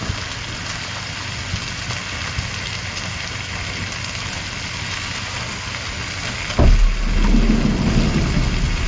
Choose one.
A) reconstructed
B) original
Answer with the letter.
B